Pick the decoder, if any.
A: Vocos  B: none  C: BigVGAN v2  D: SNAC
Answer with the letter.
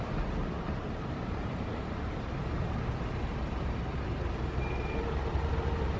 C